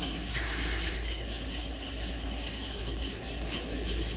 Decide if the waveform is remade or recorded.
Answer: remade